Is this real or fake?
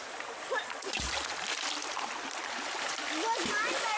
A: real